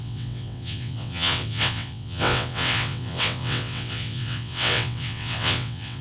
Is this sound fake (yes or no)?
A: yes